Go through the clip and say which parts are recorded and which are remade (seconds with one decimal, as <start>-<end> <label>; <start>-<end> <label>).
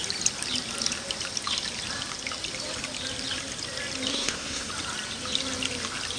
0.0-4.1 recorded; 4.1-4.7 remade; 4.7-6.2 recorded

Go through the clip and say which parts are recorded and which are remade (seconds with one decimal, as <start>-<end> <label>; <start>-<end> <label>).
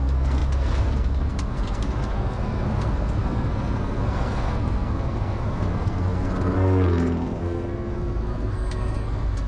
0.0-9.5 remade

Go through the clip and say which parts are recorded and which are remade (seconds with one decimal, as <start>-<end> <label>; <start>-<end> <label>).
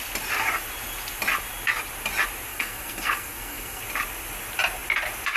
0.0-2.5 recorded; 2.5-3.8 remade; 3.8-5.4 recorded